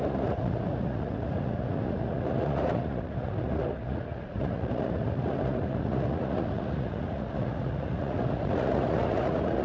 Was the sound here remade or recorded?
remade